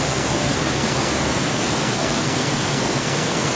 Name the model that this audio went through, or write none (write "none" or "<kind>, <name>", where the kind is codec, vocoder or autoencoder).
codec, SNAC